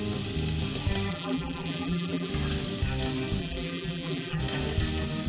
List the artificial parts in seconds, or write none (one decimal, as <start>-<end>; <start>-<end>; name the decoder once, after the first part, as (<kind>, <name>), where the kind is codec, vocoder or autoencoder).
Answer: 1.1-2.3 (vocoder, BigVGAN v2); 3.4-4.4